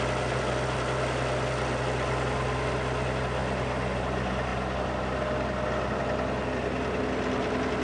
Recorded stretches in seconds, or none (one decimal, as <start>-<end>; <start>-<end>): 0.0-7.8